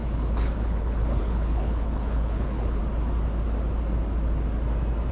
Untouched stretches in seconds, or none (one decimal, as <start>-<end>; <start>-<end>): 2.8-5.1